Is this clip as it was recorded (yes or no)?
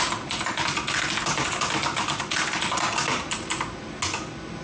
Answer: yes